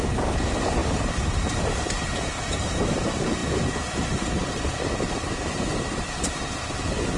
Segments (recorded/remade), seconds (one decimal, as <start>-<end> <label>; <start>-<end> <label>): 0.0-7.2 remade